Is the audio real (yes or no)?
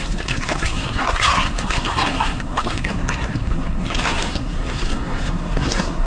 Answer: no